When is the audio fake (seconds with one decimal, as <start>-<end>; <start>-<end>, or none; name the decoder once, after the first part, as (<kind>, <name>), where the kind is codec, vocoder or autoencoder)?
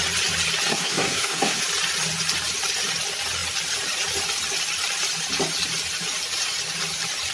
0.7-1.6 (codec, SNAC)